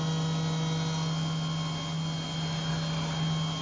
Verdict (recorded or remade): recorded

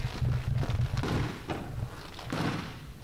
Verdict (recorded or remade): recorded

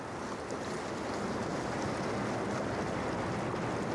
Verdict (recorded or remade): recorded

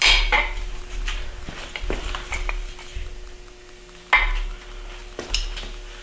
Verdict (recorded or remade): recorded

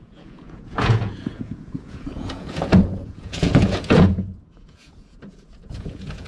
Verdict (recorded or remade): remade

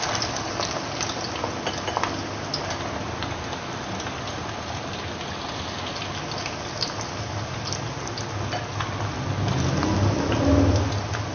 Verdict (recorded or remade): recorded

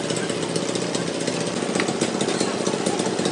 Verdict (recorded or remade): recorded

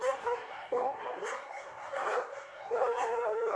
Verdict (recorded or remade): remade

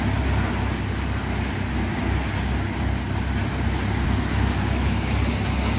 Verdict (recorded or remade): recorded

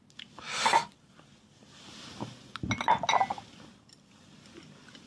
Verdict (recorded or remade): recorded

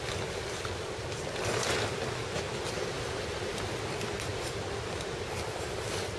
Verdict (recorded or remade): recorded